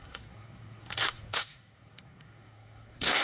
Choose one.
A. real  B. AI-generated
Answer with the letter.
B